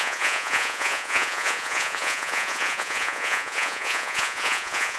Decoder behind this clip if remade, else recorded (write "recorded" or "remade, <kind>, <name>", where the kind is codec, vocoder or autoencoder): remade, vocoder, Vocos